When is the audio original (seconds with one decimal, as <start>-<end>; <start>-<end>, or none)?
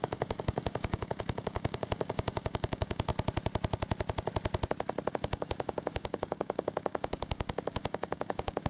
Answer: 3.1-5.1